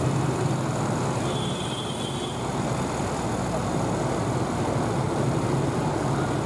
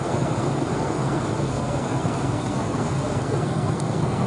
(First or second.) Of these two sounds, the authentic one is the first